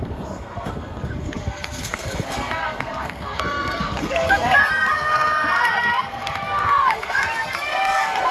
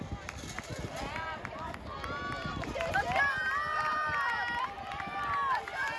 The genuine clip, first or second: second